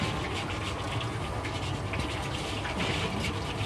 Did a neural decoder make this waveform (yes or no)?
no